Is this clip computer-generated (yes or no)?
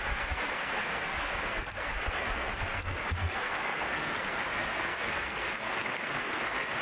yes